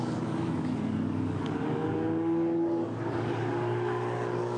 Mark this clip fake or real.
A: fake